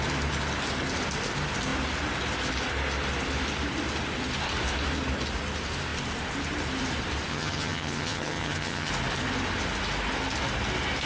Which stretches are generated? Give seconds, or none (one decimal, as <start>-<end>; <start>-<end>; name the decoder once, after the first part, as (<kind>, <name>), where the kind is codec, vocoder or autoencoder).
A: 7.3-8.9 (vocoder, HiFi-GAN)